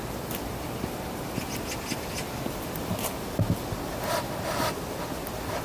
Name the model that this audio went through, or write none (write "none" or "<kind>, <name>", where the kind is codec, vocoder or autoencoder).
none